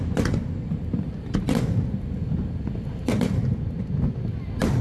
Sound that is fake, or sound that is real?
real